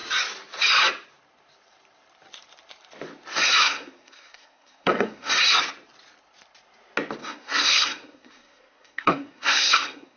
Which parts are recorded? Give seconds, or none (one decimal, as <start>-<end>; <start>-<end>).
0.0-3.6; 5.3-7.2